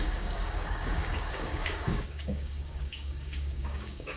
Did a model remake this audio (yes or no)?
yes